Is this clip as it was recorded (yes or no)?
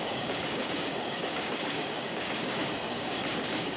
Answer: no